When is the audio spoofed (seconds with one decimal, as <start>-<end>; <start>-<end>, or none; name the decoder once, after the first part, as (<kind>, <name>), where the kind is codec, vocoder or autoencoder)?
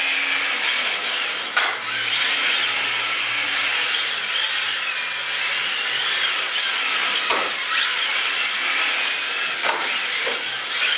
7.3-8.3 (vocoder, BigVGAN v2)